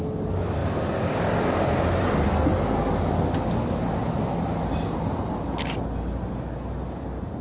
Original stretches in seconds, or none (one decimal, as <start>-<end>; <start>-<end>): 0.0-7.4